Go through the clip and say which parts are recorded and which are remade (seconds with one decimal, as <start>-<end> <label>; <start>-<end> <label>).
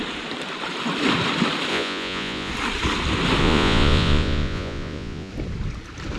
0.0-1.7 recorded; 1.7-2.5 remade; 2.5-3.4 recorded; 3.4-5.3 remade; 5.3-6.2 recorded